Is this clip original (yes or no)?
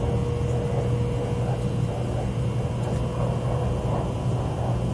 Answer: yes